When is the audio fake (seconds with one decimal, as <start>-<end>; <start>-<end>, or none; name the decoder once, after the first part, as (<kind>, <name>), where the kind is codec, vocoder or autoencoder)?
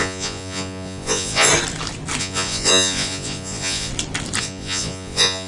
0.0-1.5 (vocoder, Vocos); 2.2-3.9; 4.4-5.5